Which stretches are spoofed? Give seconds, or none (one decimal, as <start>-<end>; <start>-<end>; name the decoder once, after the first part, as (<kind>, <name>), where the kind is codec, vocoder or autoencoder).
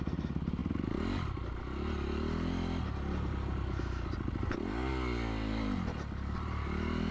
none